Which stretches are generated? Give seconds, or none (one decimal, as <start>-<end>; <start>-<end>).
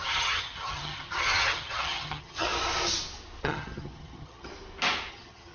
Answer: 0.0-2.5; 3.4-4.5; 5.1-5.5